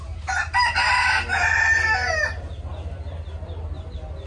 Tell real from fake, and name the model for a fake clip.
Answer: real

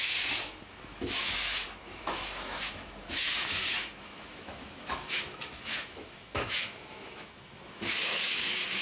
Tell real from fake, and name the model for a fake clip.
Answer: fake, autoencoder, DAC-VAE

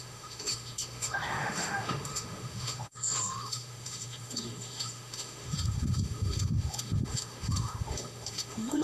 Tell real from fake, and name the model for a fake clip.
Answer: fake, autoencoder, DAC-VAE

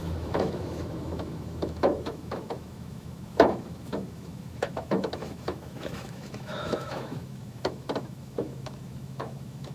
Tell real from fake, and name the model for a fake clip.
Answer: fake, autoencoder, DAC-VAE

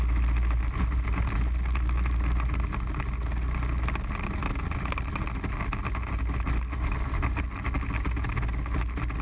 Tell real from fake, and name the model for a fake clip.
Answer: real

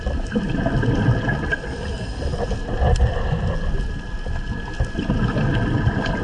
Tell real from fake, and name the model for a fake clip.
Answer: real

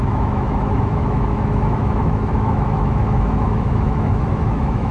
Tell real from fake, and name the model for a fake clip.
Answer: fake, autoencoder, DAC-VAE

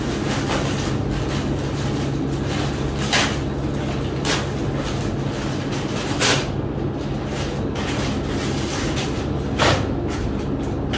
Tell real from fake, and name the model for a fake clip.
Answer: real